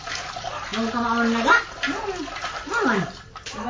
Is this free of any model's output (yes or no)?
yes